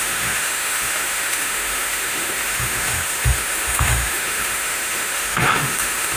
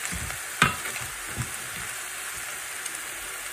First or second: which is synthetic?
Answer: first